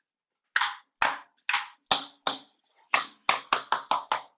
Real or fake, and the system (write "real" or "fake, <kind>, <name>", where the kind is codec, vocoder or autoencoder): real